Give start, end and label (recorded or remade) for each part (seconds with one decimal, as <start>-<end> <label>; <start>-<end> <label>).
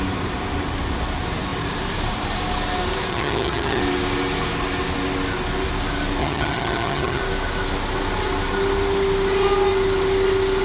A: 0.0-3.1 recorded; 3.1-3.8 remade; 3.8-6.2 recorded; 6.2-7.2 remade; 7.2-10.6 recorded